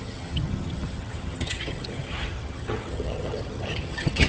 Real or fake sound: fake